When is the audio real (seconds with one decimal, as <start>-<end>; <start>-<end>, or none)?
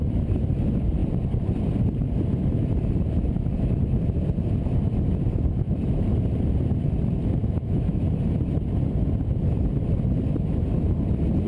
0.0-7.4; 8.0-11.5